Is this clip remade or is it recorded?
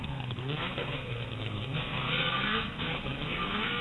remade